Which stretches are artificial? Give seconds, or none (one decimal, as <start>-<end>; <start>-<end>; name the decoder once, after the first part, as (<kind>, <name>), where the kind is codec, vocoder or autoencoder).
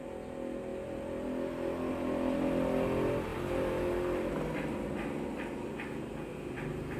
none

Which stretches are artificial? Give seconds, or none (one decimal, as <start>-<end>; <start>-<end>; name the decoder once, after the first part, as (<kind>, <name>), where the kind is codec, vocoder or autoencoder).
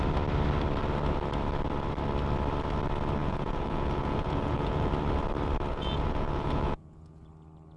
3.2-4.9 (vocoder, Vocos); 5.7-7.2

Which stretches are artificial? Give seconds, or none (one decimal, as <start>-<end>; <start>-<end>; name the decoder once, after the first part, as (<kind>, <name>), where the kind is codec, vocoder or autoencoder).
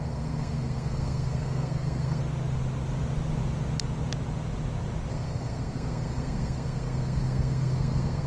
0.0-2.2 (codec, SNAC); 5.1-8.3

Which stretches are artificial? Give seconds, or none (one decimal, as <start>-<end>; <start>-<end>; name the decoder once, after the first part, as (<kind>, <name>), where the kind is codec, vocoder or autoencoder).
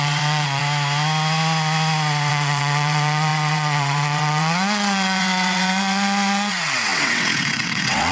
0.0-0.6 (vocoder, WaveNeXt); 2.3-8.1